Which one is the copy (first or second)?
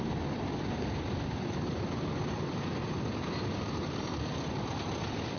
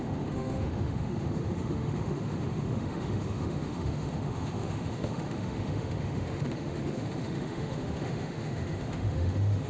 second